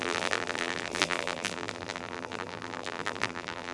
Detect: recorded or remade remade